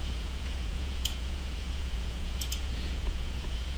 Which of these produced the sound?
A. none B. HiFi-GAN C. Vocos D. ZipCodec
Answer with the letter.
C